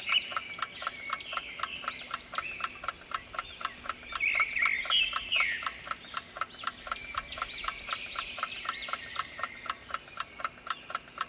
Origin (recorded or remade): remade